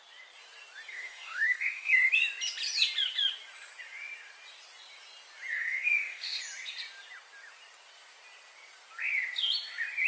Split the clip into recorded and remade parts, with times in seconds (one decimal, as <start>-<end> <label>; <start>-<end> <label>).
0.0-0.9 recorded; 0.9-2.1 remade; 2.1-5.5 recorded; 5.5-6.4 remade; 6.4-10.1 recorded